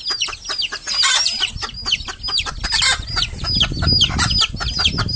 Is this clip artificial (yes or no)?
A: no